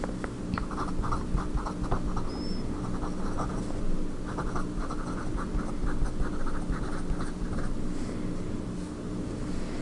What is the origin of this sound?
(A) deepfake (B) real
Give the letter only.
B